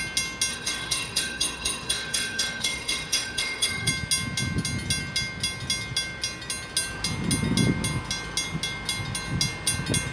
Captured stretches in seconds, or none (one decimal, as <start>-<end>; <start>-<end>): 0.0-0.5; 3.9-10.1